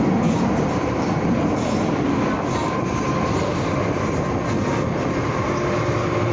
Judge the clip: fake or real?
real